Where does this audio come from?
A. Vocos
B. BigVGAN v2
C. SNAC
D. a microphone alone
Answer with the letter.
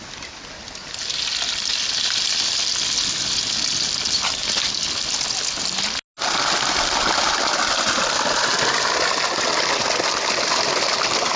D